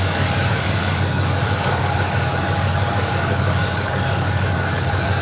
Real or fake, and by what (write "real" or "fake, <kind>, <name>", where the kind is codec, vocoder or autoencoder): fake, codec, DAC